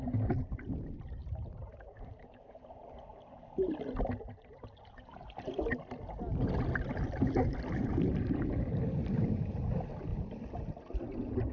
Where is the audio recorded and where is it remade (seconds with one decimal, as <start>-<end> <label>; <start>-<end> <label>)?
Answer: 0.0-1.2 recorded; 1.2-2.4 remade; 2.4-11.5 recorded